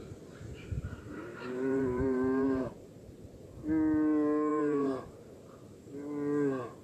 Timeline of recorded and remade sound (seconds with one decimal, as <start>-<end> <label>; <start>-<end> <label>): 0.0-0.5 recorded; 0.5-3.5 remade; 3.5-4.5 recorded; 4.5-5.4 remade; 5.4-6.8 recorded